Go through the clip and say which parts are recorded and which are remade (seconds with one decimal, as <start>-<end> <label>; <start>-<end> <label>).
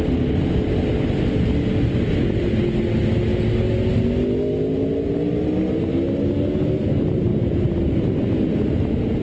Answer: 0.0-9.2 recorded